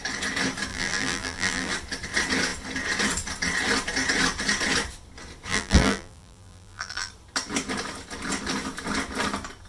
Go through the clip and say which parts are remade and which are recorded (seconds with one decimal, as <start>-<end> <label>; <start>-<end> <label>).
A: 0.0-0.7 recorded; 0.7-1.7 remade; 1.7-5.5 recorded; 5.5-7.1 remade; 7.1-9.7 recorded